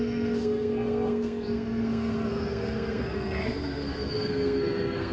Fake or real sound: fake